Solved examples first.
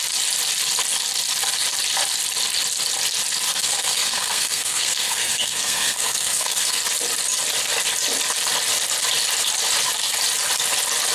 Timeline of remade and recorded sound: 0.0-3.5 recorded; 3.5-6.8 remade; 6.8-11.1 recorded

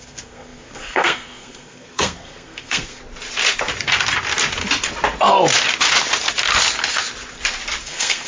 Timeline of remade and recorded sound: 0.0-3.0 remade; 3.0-7.8 recorded; 7.8-8.3 remade

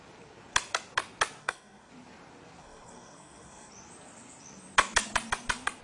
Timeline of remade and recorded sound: 0.0-1.4 recorded; 1.4-1.9 remade; 1.9-2.6 recorded; 2.6-3.7 remade; 3.7-5.8 recorded

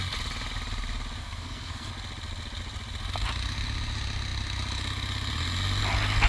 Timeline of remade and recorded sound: 0.0-1.2 recorded; 1.2-1.9 remade; 1.9-6.3 recorded